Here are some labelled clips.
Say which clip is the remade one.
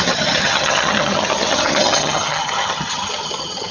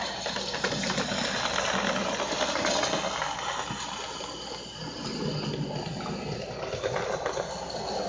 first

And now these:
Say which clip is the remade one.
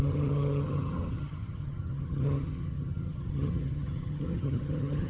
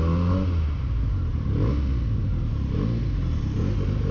first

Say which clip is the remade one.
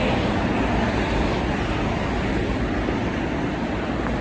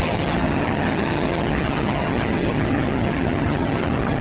second